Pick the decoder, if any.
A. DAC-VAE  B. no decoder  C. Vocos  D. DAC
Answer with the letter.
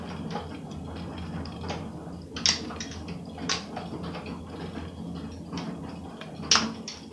B